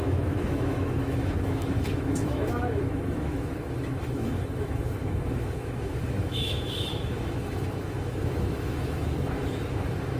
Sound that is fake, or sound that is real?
fake